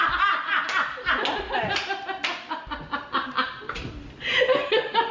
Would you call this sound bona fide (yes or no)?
yes